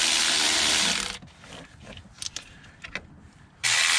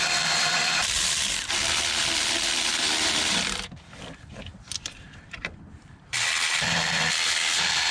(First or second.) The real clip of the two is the first